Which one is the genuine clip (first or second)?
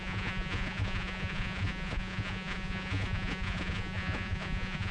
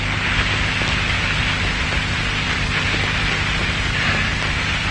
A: second